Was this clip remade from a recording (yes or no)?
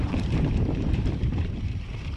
yes